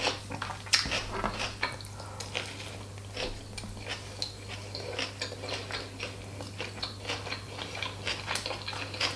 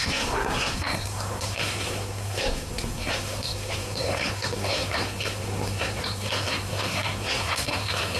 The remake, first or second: second